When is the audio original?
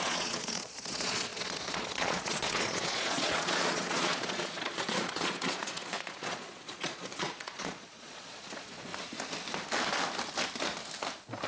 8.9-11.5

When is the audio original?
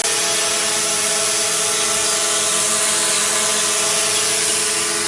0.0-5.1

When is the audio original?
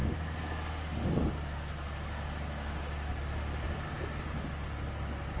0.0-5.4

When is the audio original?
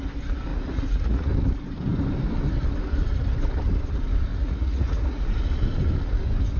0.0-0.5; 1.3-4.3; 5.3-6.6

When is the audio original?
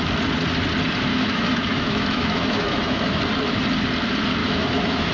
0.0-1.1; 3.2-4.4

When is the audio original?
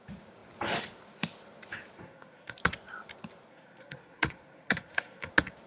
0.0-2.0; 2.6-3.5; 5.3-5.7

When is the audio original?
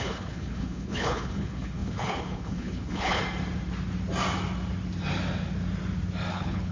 3.2-6.3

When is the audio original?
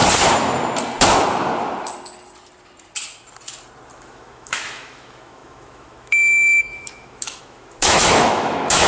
0.0-4.0